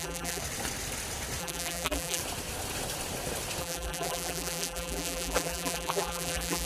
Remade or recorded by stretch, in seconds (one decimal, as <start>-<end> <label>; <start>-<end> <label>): 0.0-0.4 remade; 0.4-1.4 recorded; 1.4-2.2 remade; 2.2-3.6 recorded; 3.6-6.7 remade